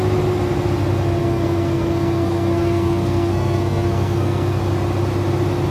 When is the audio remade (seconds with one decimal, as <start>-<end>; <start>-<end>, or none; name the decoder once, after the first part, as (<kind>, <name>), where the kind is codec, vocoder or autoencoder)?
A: 1.2-4.6 (codec, SNAC)